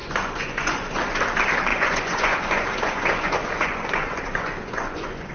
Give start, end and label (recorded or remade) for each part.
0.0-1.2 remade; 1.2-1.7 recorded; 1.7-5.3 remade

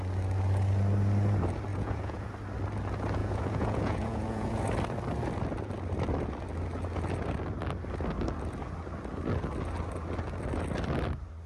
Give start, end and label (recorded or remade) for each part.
0.0-1.7 recorded; 1.7-2.3 remade; 2.3-3.2 recorded; 3.2-4.6 remade; 4.6-11.5 recorded

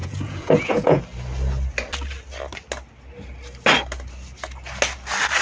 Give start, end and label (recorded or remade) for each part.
0.0-1.0 remade; 1.0-5.4 recorded

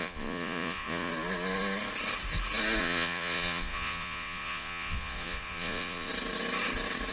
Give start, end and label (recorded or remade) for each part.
0.0-1.1 remade; 1.1-2.8 recorded; 2.8-6.1 remade; 6.1-7.1 recorded

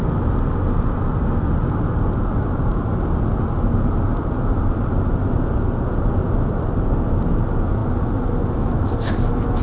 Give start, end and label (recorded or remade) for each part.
0.0-9.6 recorded

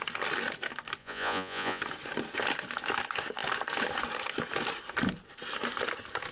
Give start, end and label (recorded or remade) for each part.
0.0-1.0 recorded; 1.0-1.8 remade; 1.8-6.3 recorded

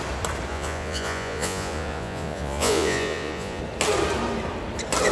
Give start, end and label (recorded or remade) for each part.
0.0-0.5 recorded; 0.5-3.6 remade; 3.6-5.1 recorded

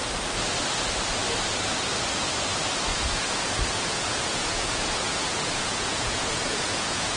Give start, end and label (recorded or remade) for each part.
0.0-2.9 recorded; 2.9-7.2 remade